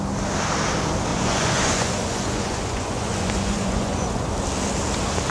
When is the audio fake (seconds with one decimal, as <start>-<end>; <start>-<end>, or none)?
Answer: 1.1-4.3